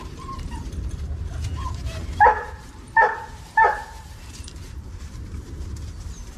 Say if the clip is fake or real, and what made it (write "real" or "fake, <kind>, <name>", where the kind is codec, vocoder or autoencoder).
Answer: fake, vocoder, BigVGAN v2